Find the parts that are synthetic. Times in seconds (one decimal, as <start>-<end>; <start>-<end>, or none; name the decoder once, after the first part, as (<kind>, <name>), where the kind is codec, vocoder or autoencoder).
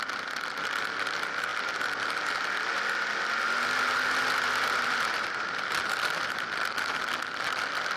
none